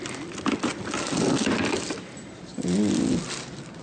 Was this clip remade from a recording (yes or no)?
no